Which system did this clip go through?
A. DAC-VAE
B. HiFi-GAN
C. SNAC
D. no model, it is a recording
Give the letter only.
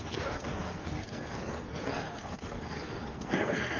C